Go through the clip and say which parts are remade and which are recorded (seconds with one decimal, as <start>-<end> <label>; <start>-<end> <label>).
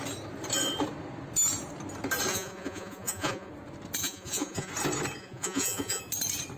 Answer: 0.0-2.3 recorded; 2.3-3.5 remade; 3.5-4.0 recorded; 4.0-4.7 remade; 4.7-5.2 recorded; 5.2-6.0 remade; 6.0-6.6 recorded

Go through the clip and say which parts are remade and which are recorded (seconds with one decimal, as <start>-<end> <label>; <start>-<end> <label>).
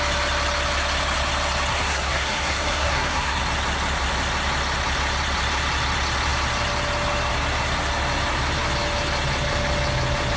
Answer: 0.0-1.7 recorded; 1.7-3.4 remade; 3.4-10.4 recorded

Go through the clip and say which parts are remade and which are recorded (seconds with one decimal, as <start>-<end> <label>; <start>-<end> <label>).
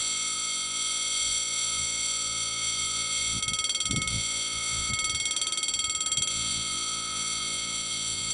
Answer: 0.0-3.4 remade; 3.4-4.1 recorded; 4.1-4.9 remade; 4.9-6.3 recorded; 6.3-8.3 remade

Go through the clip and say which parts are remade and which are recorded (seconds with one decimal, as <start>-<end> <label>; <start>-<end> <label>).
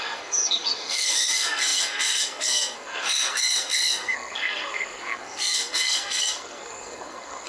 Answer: 0.0-7.5 remade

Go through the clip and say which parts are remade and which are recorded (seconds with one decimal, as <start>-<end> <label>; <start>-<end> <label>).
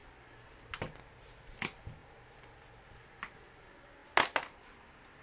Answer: 0.0-5.2 recorded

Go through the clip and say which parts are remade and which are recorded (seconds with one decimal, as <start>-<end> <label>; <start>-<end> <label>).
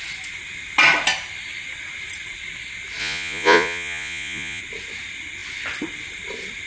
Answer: 0.0-3.0 recorded; 3.0-4.6 remade; 4.6-6.7 recorded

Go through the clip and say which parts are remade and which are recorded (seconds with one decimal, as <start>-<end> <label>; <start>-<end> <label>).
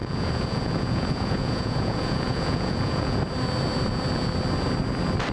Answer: 0.0-3.2 remade; 3.2-5.3 recorded